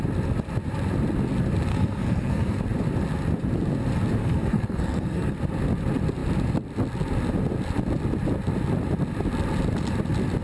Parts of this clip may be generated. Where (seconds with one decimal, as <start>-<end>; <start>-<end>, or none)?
1.7-2.6; 4.2-5.3